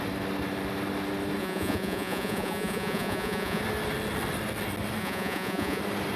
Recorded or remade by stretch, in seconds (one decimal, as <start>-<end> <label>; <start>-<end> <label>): 0.0-1.4 recorded; 1.4-3.6 remade; 3.6-5.0 recorded; 5.0-5.8 remade; 5.8-6.2 recorded